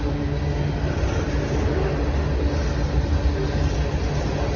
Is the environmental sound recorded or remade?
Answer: recorded